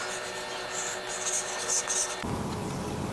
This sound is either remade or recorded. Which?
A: recorded